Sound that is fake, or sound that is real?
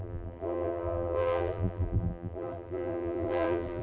fake